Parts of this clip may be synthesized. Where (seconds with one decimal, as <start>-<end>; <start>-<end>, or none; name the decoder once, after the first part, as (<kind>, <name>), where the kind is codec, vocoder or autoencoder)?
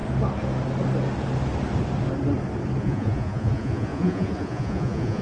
2.8-5.2 (vocoder, Vocos)